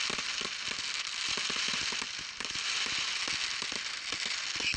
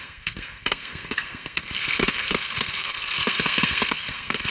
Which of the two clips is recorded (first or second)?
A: first